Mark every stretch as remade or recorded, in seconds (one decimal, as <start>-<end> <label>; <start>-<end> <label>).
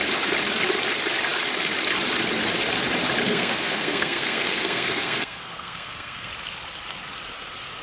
0.0-3.3 recorded; 3.3-6.3 remade; 6.3-7.8 recorded